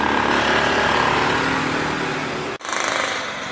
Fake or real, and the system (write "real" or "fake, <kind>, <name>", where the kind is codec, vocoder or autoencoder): real